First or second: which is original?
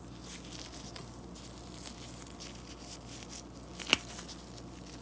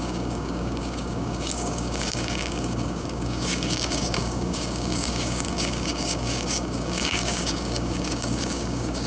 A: first